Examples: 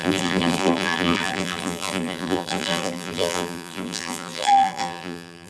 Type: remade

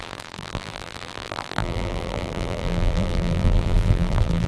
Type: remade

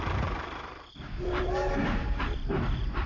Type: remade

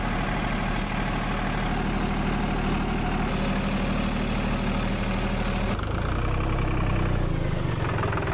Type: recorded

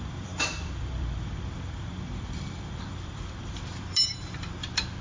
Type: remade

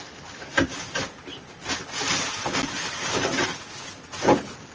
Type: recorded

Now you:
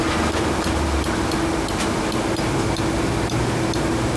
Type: recorded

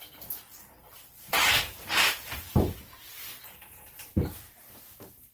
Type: remade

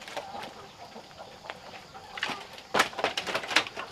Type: remade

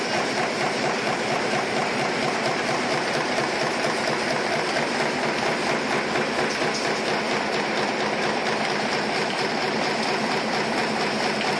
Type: remade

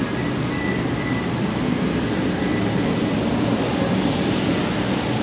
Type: recorded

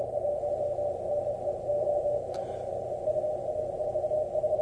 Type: recorded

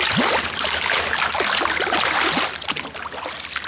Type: recorded